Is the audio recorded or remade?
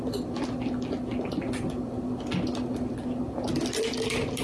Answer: recorded